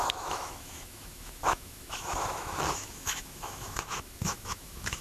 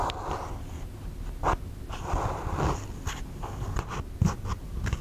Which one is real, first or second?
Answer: second